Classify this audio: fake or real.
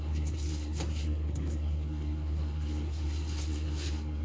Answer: fake